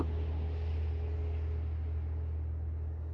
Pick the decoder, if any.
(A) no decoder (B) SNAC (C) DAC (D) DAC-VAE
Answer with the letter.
A